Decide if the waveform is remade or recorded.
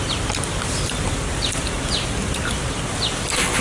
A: recorded